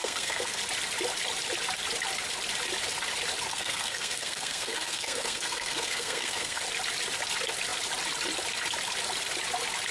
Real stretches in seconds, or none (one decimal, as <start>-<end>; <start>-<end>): 0.6-3.5; 6.6-9.9